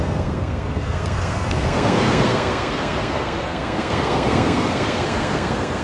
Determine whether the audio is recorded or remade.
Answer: remade